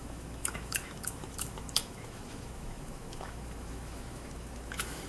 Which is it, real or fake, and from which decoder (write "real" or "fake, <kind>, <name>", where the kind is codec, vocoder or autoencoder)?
fake, autoencoder, DAC-VAE